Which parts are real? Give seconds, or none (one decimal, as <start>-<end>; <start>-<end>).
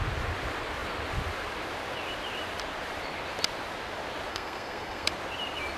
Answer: 0.0-4.3; 5.1-5.8